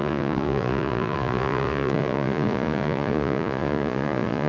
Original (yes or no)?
no